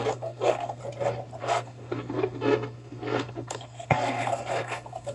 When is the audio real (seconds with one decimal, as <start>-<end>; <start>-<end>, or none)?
0.8-1.4